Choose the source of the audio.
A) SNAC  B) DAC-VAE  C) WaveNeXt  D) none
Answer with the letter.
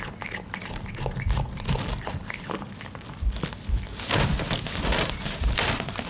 D